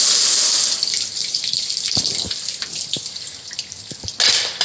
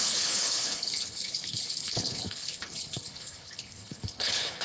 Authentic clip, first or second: first